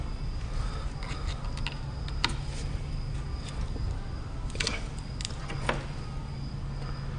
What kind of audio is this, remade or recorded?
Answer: recorded